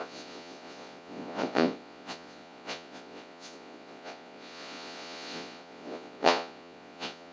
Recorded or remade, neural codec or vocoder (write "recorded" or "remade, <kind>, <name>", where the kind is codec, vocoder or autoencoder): remade, vocoder, Vocos